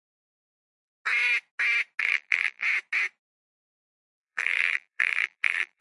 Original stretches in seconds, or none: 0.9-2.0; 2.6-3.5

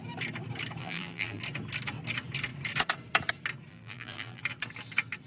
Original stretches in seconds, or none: 0.0-0.8; 1.4-3.7; 4.4-5.3